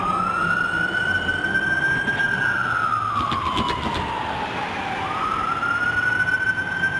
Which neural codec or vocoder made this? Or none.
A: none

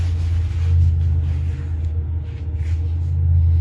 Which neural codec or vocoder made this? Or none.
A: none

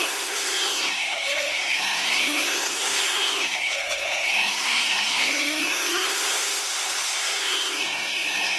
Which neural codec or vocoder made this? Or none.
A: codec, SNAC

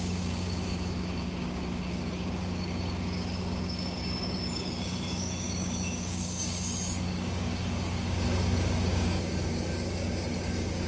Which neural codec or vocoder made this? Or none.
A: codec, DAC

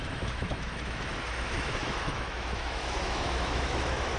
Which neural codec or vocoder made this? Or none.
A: autoencoder, DAC-VAE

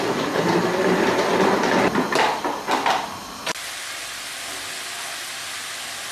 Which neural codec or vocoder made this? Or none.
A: none